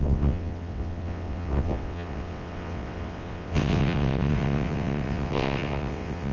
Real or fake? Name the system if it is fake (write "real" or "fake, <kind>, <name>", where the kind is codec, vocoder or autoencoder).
fake, vocoder, WaveNeXt